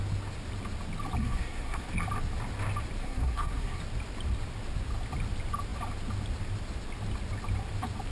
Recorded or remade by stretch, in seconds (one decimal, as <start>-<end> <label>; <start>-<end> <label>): 0.0-1.2 recorded; 1.2-1.9 remade; 1.9-3.0 recorded; 3.0-3.8 remade; 3.8-8.1 recorded